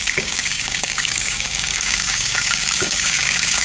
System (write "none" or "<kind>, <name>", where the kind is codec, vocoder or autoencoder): codec, DAC